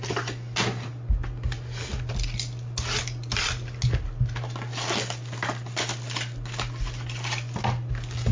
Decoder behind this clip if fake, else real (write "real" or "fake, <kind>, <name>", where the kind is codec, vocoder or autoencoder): real